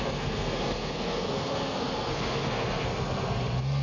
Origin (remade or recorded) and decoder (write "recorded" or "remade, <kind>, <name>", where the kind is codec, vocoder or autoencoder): remade, codec, SNAC